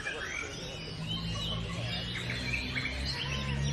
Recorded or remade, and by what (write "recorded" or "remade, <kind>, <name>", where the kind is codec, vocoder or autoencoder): recorded